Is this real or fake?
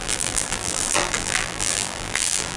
fake